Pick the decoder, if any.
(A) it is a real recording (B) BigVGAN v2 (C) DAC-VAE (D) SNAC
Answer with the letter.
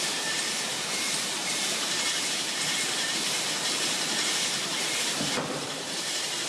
B